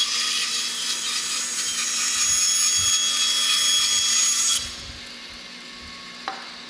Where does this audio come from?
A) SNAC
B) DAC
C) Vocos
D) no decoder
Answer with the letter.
D